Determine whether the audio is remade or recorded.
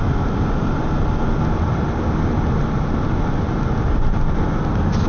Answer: recorded